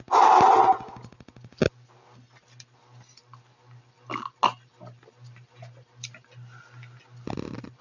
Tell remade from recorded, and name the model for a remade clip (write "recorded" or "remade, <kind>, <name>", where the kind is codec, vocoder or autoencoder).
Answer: recorded